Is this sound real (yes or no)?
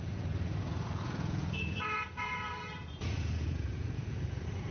no